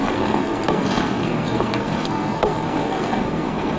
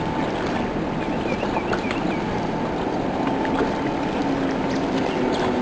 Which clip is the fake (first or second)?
first